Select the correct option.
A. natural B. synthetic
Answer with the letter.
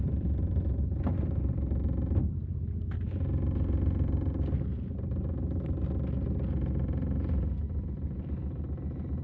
A